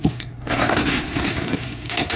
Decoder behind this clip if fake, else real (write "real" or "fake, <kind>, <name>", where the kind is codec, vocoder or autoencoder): fake, codec, SNAC